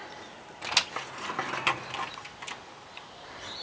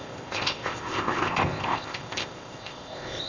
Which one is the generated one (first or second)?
second